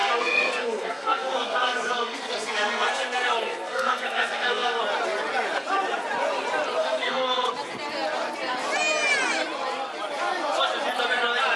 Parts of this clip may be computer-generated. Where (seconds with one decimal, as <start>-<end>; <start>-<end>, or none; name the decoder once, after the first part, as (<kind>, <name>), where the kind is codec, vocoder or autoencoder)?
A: 0.0-4.8 (codec, SNAC); 6.8-7.5